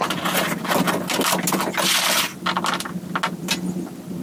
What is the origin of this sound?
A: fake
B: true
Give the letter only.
B